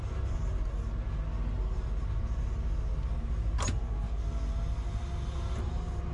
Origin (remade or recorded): recorded